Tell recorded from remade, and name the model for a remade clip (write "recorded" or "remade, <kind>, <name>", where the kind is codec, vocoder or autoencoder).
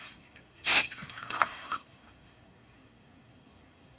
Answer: remade, codec, SNAC